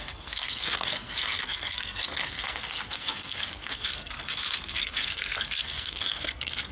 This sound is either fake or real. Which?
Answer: fake